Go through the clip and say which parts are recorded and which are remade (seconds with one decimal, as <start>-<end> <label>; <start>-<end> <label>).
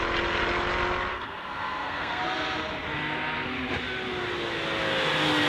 0.0-1.1 recorded; 1.1-2.2 remade; 2.2-5.5 recorded